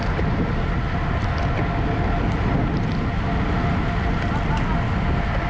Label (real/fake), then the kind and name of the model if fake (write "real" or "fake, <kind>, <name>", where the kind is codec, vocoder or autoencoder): real